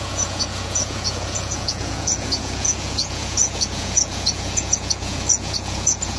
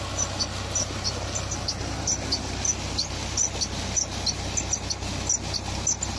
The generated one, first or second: first